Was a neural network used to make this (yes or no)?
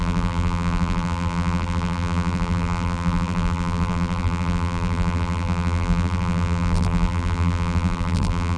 yes